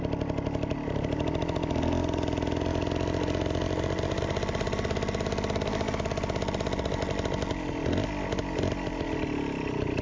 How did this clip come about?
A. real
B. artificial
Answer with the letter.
A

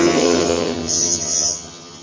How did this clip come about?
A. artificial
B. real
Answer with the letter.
A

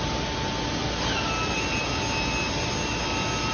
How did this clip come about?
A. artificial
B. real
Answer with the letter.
B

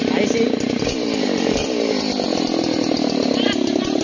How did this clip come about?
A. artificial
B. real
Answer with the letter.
B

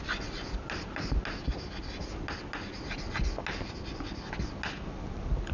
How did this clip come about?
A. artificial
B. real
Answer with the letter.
B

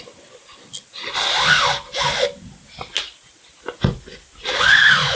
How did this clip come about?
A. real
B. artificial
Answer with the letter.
A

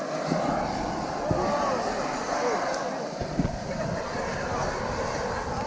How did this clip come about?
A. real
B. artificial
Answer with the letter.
A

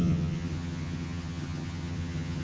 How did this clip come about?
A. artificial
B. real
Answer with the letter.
A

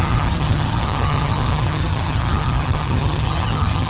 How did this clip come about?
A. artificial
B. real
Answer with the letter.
A